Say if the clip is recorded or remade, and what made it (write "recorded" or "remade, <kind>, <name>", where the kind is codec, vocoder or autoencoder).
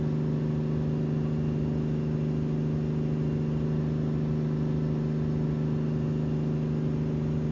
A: recorded